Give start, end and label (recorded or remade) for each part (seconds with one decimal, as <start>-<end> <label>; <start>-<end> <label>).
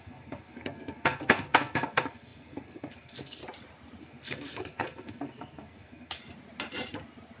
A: 0.0-3.4 remade; 3.4-4.0 recorded; 4.0-6.2 remade; 6.2-7.4 recorded